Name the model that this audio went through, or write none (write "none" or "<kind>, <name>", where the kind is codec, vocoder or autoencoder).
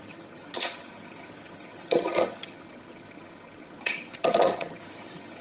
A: vocoder, HiFi-GAN